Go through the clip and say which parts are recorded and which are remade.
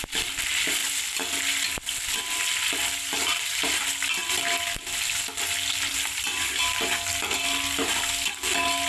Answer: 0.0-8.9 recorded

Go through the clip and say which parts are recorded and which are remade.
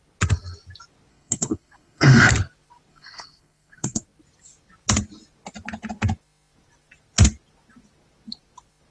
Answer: 0.0-1.1 recorded; 1.1-2.3 remade; 2.3-2.9 recorded; 2.9-4.0 remade; 4.0-8.9 recorded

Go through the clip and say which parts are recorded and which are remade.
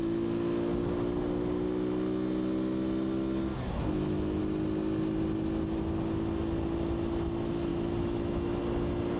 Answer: 0.0-3.5 recorded; 3.5-4.4 remade; 4.4-7.7 recorded; 7.7-8.6 remade; 8.6-9.2 recorded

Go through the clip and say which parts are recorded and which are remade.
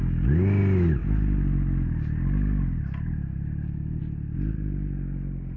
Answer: 0.0-5.6 recorded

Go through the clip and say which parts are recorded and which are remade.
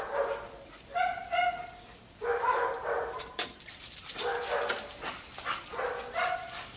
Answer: 0.0-6.8 remade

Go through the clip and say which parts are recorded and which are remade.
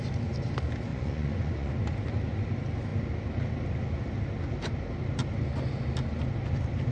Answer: 0.0-0.9 recorded; 0.9-1.7 remade; 1.7-6.9 recorded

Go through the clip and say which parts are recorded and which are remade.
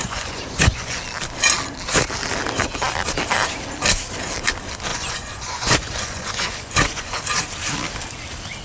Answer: 0.0-1.0 remade; 1.0-4.9 recorded; 4.9-7.2 remade; 7.2-8.6 recorded